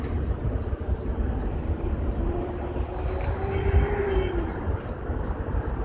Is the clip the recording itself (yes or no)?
no